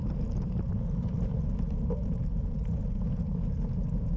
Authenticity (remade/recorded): recorded